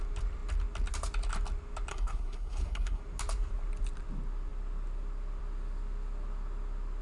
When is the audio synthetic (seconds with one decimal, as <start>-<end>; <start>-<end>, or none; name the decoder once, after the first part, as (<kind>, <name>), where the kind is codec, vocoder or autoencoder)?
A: 1.9-3.0 (codec, SNAC)